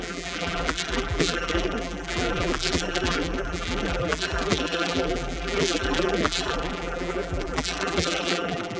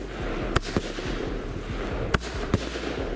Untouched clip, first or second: second